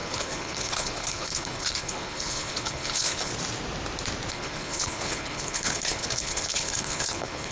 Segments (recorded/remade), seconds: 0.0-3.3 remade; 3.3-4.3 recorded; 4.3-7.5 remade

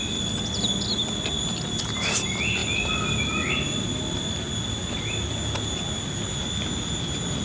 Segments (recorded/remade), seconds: 0.0-7.4 recorded

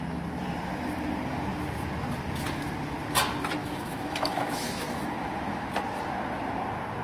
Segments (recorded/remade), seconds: 0.0-3.6 recorded; 3.6-5.7 remade; 5.7-7.0 recorded